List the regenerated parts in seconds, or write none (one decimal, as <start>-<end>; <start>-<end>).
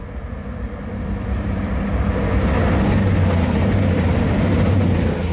0.4-1.8